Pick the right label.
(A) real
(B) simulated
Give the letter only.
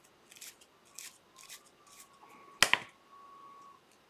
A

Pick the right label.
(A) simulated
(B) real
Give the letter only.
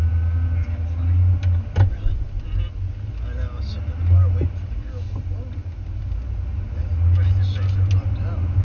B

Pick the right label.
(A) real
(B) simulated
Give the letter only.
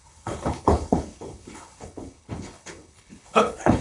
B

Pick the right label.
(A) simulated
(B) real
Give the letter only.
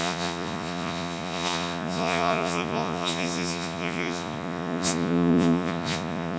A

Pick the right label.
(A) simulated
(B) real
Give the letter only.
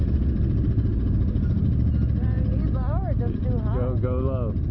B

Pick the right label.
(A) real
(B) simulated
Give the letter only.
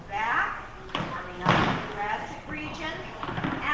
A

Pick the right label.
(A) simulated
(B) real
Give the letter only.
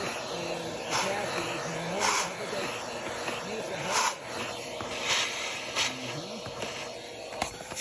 B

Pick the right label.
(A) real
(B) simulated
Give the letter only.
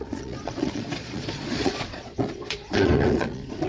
B